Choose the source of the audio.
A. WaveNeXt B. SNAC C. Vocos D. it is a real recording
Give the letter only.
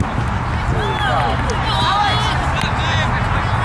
D